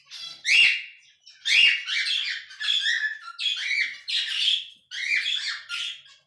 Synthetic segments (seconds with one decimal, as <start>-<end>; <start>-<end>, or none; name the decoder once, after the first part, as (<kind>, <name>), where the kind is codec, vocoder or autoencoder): none